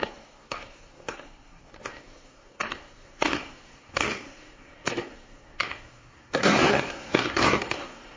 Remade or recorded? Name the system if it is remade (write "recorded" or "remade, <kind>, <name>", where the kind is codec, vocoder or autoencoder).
remade, codec, SNAC